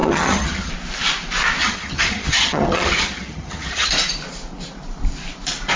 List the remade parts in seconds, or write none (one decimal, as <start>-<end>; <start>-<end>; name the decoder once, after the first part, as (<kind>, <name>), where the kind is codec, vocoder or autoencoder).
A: 0.0-0.7 (vocoder, HiFi-GAN); 1.6-3.9

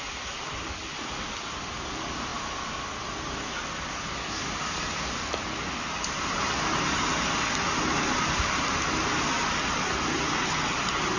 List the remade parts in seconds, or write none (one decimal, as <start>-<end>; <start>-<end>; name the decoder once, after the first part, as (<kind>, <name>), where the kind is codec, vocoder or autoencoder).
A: none

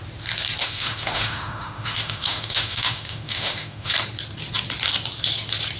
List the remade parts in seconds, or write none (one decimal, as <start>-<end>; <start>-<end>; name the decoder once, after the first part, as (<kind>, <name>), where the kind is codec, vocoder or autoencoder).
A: 0.6-3.9 (autoencoder, DAC-VAE)

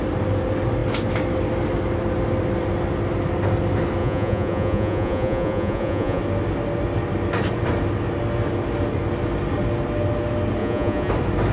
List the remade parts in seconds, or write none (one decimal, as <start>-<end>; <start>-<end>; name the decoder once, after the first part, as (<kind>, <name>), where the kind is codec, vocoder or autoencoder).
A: 4.0-6.2 (vocoder, Vocos); 10.6-11.1

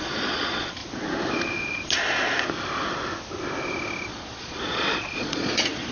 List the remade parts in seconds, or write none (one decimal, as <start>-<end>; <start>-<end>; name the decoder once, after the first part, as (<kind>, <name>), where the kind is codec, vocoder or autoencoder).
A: 0.0-0.8 (vocoder, Vocos); 4.1-5.9

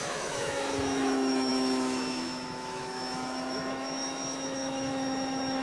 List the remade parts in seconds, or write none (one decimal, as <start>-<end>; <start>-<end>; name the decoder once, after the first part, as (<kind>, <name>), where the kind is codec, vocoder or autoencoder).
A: 0.0-5.6 (autoencoder, DAC-VAE)

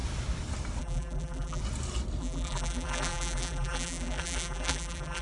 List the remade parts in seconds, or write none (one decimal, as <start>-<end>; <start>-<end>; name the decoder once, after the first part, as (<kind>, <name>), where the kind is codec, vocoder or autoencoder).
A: 0.8-1.6 (vocoder, BigVGAN v2); 2.2-5.2

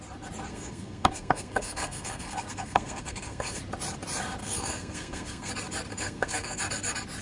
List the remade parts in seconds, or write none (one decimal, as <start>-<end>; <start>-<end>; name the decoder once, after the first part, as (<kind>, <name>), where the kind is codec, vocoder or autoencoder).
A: 0.5-3.6 (codec, SNAC); 4.4-5.5; 5.9-6.6